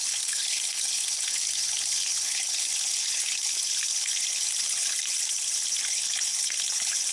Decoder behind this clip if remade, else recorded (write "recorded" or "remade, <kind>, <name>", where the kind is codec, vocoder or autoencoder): remade, codec, HILCodec